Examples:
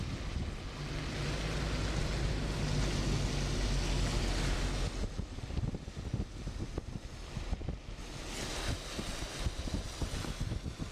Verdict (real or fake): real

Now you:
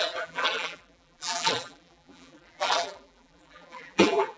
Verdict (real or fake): fake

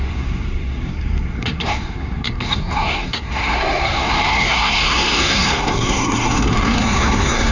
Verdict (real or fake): fake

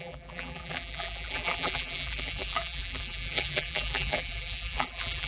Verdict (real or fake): fake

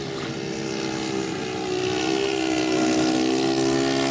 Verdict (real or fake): real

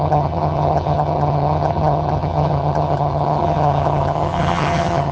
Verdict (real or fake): fake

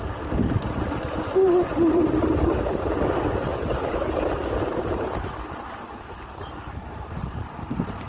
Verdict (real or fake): fake